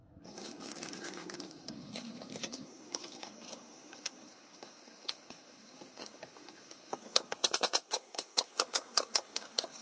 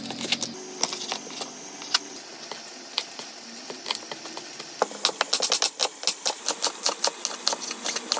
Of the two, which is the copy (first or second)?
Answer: first